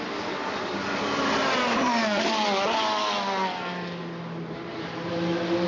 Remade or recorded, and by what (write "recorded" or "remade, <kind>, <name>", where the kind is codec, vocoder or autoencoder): recorded